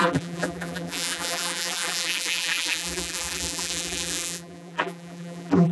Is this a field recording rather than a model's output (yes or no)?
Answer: no